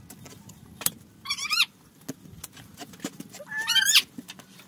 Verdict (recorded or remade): recorded